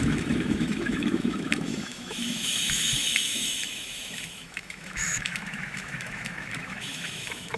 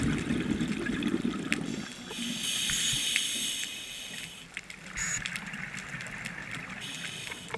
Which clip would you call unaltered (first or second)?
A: second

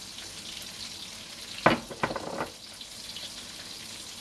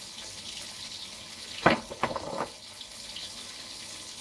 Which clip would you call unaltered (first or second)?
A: first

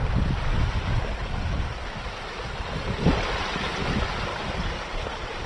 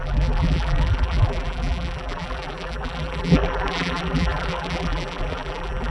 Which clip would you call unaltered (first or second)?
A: first